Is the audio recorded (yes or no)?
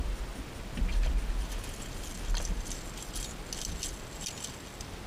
yes